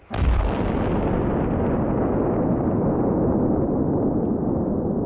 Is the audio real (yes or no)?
yes